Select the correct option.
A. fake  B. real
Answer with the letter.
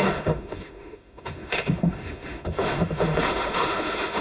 A